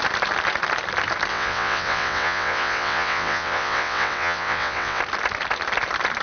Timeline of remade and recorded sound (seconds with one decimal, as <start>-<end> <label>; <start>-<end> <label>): 0.0-1.3 recorded; 1.3-5.0 remade; 5.0-6.2 recorded